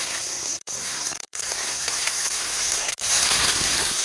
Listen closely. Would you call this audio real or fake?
fake